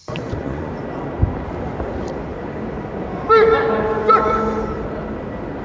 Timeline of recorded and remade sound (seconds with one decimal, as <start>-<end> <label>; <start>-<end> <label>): 0.0-0.7 remade; 0.7-5.6 recorded